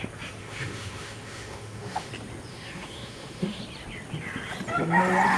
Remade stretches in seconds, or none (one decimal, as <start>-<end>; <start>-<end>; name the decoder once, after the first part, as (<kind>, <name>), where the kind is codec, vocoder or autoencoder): 0.4-2.1 (autoencoder, DAC-VAE); 2.5-3.6